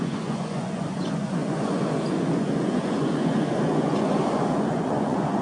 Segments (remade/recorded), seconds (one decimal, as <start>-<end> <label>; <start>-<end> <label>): 0.0-5.4 remade

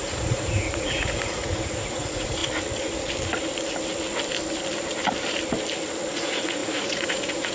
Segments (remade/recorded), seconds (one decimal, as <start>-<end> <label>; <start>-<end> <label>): 0.0-2.4 remade; 2.4-6.1 recorded; 6.1-7.5 remade

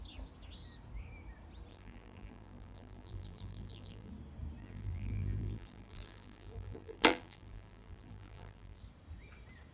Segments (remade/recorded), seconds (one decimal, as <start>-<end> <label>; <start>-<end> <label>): 0.0-1.7 recorded; 1.7-4.1 remade; 4.1-4.6 recorded; 4.6-8.8 remade; 8.8-9.7 recorded

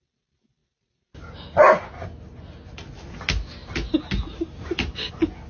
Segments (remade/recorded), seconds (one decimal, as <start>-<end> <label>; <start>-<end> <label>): 0.0-5.5 recorded

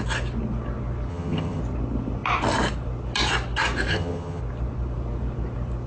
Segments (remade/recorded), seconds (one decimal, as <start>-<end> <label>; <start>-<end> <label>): 0.0-1.1 recorded; 1.1-1.6 remade; 1.6-3.9 recorded; 3.9-4.4 remade; 4.4-5.9 recorded